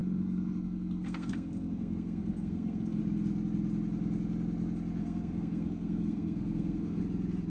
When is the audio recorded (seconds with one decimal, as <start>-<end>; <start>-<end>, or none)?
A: 3.0-5.0; 7.0-7.5